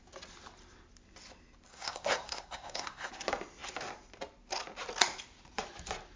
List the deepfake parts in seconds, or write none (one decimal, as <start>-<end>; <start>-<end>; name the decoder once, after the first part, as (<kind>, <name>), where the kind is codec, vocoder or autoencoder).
1.7-3.1 (codec, SNAC)